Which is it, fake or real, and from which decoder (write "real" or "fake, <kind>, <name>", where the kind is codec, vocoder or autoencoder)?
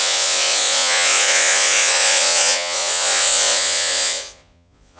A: fake, vocoder, Vocos